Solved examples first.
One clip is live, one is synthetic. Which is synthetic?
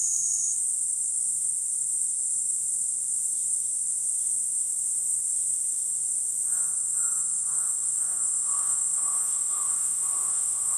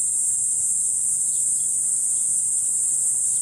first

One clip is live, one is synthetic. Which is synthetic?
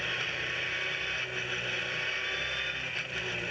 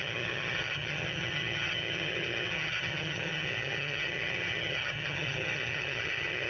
second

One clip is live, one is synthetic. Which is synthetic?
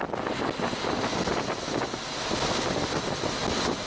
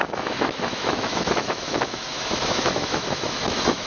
second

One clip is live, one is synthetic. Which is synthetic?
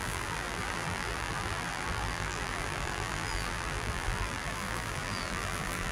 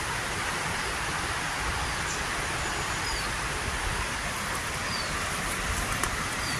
first